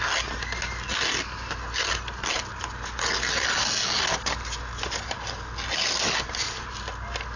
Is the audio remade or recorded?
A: recorded